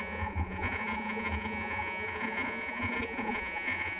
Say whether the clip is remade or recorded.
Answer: remade